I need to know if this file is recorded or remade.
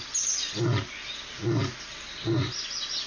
recorded